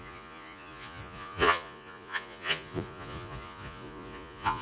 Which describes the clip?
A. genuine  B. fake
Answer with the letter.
B